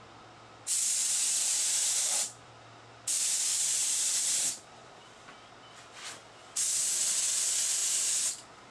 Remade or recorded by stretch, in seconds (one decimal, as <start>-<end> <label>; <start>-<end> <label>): 0.0-1.0 recorded; 1.0-2.5 remade; 2.5-3.8 recorded; 3.8-4.9 remade; 4.9-8.7 recorded